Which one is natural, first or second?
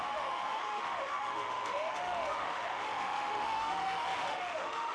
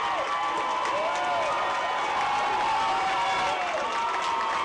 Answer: second